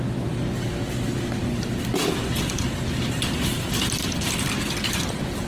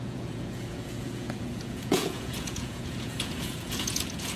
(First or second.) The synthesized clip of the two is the second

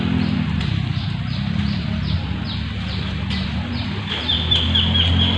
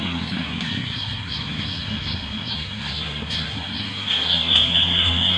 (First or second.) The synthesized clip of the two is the second